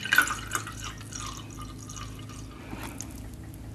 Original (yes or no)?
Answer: yes